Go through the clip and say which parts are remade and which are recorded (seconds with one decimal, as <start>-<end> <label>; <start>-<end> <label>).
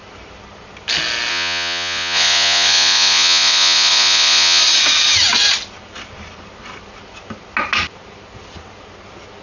0.0-1.3 recorded; 1.3-4.6 remade; 4.6-9.4 recorded